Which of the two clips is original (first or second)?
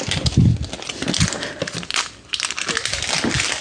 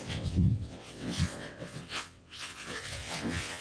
first